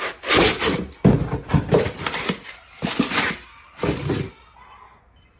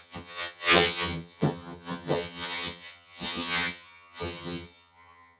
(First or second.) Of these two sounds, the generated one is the second